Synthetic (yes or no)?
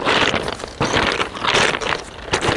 no